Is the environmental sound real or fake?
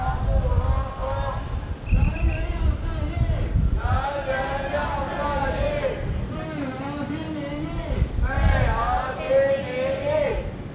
real